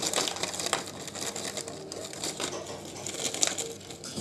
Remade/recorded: recorded